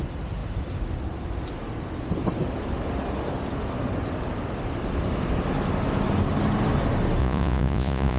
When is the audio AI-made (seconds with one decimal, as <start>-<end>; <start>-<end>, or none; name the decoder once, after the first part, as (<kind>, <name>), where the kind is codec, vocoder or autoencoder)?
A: 7.2-8.2 (vocoder, Vocos)